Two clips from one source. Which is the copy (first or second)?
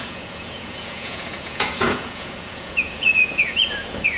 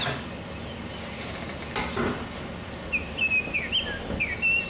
first